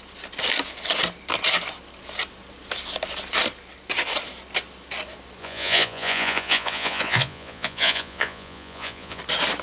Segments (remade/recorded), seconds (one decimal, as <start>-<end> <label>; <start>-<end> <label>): 0.0-5.4 recorded; 5.4-9.2 remade; 9.2-9.6 recorded